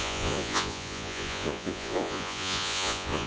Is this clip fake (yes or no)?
yes